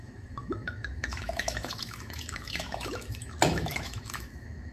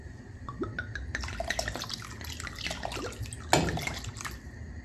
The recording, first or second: second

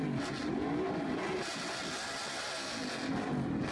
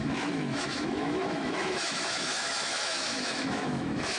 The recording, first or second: first